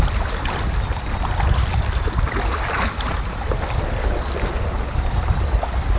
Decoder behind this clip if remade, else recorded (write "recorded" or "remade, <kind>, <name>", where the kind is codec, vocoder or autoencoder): recorded